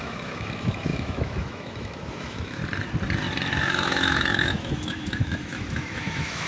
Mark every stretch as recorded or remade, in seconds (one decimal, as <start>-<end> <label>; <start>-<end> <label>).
0.0-2.6 remade; 2.6-3.6 recorded; 3.6-6.5 remade